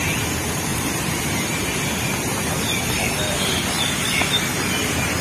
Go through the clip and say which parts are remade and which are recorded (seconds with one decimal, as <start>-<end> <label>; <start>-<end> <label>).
0.0-0.7 recorded; 0.7-3.8 remade; 3.8-5.2 recorded